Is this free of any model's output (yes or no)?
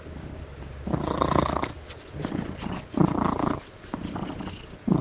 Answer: yes